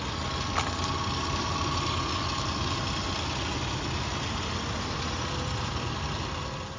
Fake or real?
real